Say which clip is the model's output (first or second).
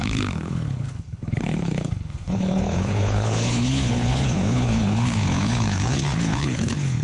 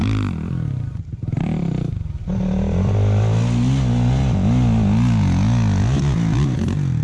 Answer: first